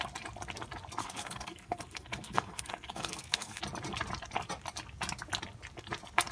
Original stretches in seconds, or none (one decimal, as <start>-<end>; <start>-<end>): 0.0-1.0; 3.6-6.3